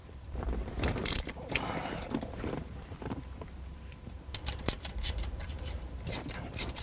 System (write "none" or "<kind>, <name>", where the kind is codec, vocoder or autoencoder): vocoder, BigVGAN v2